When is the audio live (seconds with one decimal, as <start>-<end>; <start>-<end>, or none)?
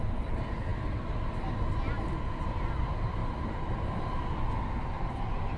0.0-5.6